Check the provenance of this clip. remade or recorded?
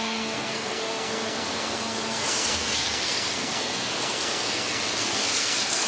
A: remade